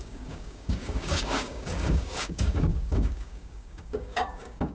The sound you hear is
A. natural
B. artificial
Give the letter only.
B